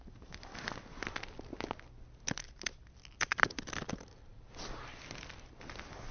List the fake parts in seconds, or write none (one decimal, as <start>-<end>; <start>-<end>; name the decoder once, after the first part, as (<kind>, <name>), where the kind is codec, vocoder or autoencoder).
none

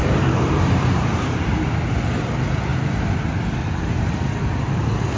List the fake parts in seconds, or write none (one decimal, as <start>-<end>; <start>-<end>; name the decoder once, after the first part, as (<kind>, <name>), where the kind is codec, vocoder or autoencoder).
0.0-1.6 (vocoder, BigVGAN v2)

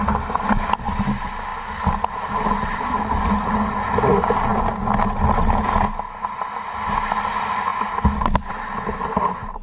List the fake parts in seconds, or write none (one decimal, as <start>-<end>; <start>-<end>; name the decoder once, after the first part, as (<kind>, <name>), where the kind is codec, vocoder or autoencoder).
none

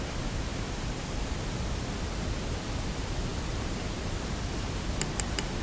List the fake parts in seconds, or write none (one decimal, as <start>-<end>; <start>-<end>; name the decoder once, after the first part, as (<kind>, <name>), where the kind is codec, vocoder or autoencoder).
0.5-1.8 (vocoder, BigVGAN v2); 3.3-4.2

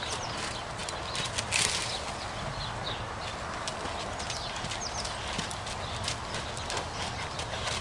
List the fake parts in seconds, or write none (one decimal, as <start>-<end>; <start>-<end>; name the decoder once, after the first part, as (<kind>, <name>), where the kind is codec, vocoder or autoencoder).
none